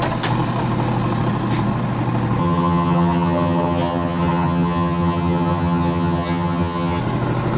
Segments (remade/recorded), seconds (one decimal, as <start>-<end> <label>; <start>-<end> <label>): 0.0-2.4 recorded; 2.4-7.0 remade; 7.0-7.6 recorded